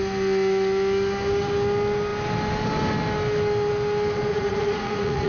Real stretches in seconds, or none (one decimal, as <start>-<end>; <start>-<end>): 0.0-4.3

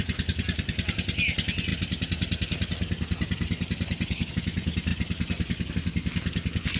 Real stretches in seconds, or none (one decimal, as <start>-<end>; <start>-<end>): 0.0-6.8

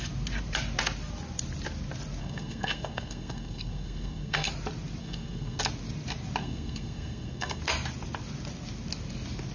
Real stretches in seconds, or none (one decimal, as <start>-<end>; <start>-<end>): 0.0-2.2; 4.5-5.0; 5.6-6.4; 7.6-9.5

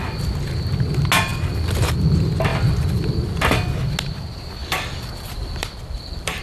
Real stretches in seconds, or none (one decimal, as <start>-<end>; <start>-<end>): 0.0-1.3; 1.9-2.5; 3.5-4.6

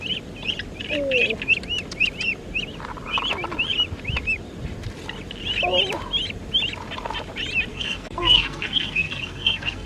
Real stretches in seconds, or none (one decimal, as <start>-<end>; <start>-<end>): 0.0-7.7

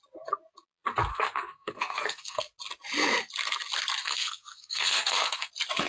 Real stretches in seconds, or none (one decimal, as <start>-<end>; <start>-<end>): 0.0-1.1; 2.4-4.0; 5.5-5.9